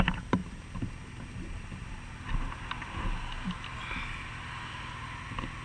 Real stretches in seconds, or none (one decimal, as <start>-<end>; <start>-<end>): 0.0-5.6